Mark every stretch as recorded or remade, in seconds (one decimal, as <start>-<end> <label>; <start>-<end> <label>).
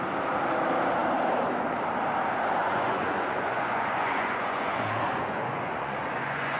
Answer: 0.0-2.6 recorded; 2.6-6.6 remade